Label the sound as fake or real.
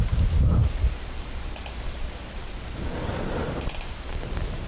fake